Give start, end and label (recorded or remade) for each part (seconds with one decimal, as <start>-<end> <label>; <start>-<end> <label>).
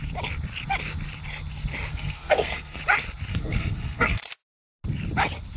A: 0.0-1.9 recorded; 1.9-2.8 remade; 2.8-3.3 recorded; 3.3-4.3 remade; 4.3-5.6 recorded